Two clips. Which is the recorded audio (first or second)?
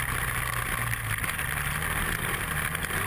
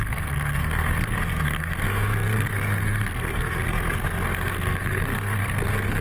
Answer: first